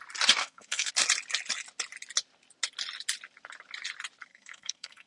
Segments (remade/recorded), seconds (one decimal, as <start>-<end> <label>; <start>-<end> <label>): 0.0-0.4 recorded; 0.4-0.9 remade; 0.9-4.3 recorded; 4.3-5.1 remade